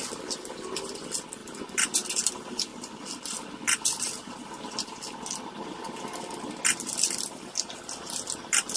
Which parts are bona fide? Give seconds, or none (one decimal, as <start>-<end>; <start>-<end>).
2.7-5.4